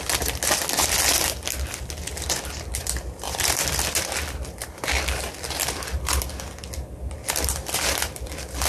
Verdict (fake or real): real